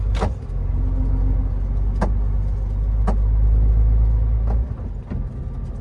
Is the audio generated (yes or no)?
no